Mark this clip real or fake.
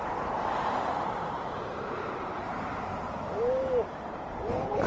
fake